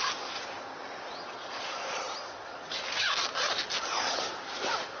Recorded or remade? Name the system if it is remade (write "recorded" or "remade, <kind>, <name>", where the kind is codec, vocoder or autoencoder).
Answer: recorded